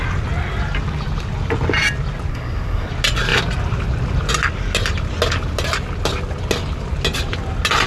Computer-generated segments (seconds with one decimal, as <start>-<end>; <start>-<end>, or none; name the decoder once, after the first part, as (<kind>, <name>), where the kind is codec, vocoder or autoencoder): 2.3-2.9 (codec, SNAC)